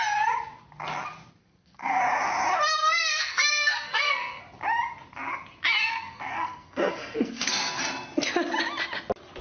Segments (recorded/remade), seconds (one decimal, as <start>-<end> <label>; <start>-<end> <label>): 0.0-1.4 recorded; 1.4-2.0 remade; 2.0-2.8 recorded; 2.8-4.4 remade; 4.4-5.9 recorded; 5.9-7.8 remade; 7.8-9.4 recorded